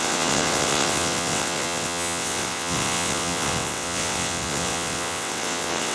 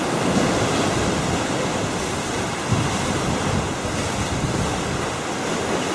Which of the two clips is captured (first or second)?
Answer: second